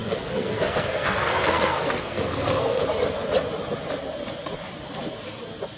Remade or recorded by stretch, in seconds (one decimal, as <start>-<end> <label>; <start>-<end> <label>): 0.0-2.8 remade; 2.8-5.8 recorded